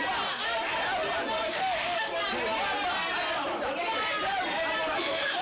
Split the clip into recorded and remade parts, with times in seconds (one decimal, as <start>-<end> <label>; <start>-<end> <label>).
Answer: 0.0-1.5 recorded; 1.5-2.1 remade; 2.1-5.0 recorded; 5.0-5.4 remade